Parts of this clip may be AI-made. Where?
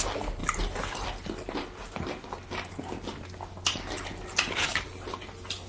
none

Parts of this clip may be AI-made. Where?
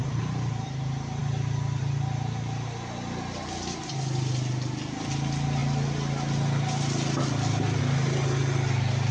none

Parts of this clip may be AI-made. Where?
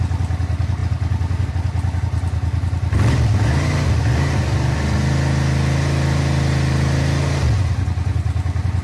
none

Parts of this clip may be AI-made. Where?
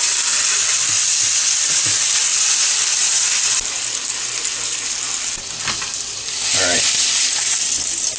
none